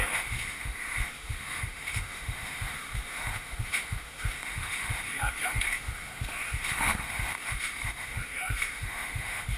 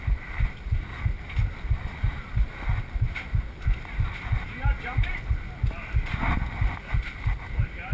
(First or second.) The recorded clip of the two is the second